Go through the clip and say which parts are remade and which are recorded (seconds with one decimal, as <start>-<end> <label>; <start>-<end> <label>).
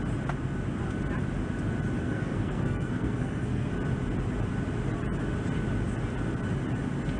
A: 0.0-2.0 recorded; 2.0-3.7 remade; 3.7-7.2 recorded